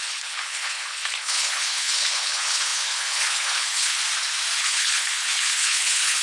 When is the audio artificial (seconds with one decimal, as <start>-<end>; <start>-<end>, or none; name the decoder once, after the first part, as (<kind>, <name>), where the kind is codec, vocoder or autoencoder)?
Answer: 0.0-4.0 (codec, HILCodec); 4.6-6.2